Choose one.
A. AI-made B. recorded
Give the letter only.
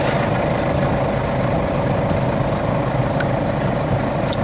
B